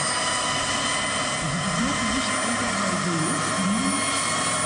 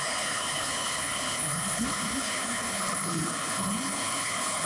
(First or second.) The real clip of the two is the first